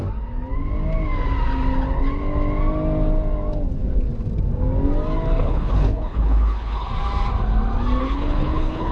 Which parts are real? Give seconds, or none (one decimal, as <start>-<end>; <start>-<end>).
0.0-5.4; 6.9-8.0

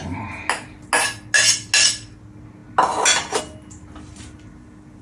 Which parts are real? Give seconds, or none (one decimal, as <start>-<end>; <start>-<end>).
0.0-5.0

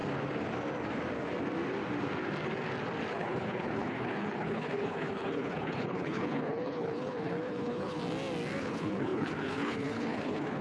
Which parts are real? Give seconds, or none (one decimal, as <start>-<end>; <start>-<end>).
0.0-3.1; 8.0-8.6

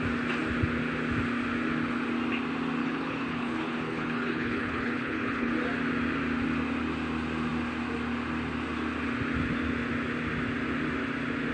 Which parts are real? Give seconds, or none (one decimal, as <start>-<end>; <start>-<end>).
0.0-2.8; 5.5-11.5

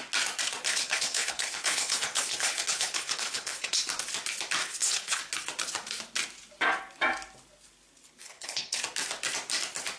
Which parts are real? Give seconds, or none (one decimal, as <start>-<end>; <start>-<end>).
0.0-0.6; 3.8-4.6; 5.2-8.2; 8.8-10.0

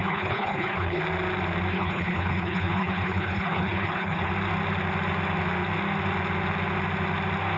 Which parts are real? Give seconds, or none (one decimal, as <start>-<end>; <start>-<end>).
1.0-1.7; 4.3-7.6

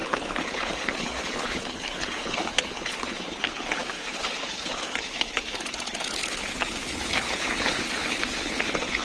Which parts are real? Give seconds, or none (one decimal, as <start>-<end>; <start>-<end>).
none